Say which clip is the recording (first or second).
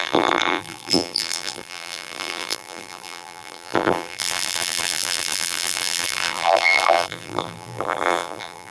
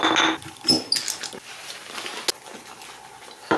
second